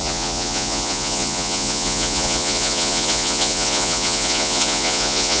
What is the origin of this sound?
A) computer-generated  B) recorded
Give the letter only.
A